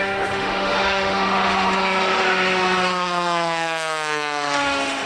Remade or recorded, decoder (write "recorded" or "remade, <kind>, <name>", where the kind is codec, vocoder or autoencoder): remade, autoencoder, DAC-VAE